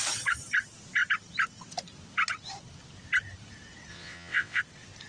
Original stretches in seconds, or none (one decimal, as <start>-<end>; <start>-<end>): 0.0-3.9; 4.6-5.1